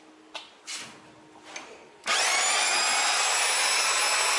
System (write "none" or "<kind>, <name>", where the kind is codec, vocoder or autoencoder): none